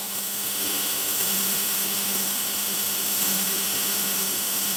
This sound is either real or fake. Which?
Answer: fake